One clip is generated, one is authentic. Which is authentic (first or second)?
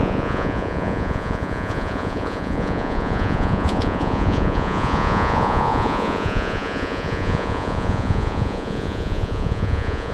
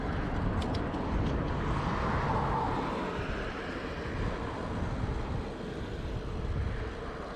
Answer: second